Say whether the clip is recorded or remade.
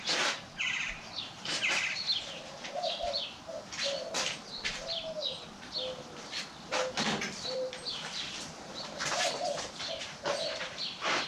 remade